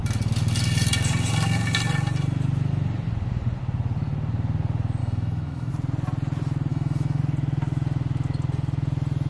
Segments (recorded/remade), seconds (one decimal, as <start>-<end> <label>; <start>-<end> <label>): 0.0-5.0 recorded; 5.0-5.7 remade; 5.7-6.7 recorded; 6.7-7.2 remade; 7.2-9.3 recorded